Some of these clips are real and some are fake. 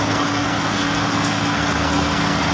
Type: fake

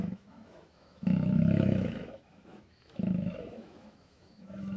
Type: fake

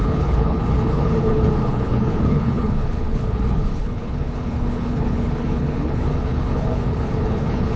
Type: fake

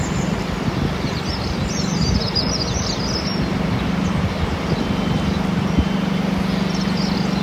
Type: real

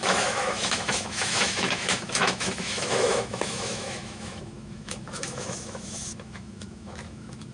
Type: fake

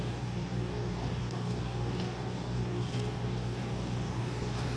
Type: fake